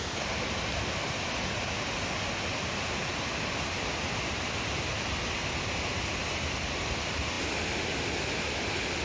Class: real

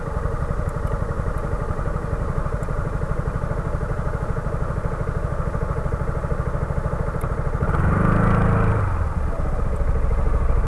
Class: real